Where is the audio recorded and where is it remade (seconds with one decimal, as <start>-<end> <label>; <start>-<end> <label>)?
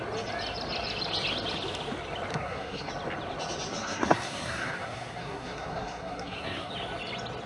0.0-2.3 recorded; 2.3-2.9 remade; 2.9-3.7 recorded; 3.7-6.7 remade; 6.7-7.5 recorded